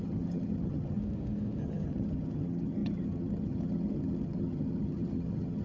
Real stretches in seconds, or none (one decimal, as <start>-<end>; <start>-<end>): 1.0-1.6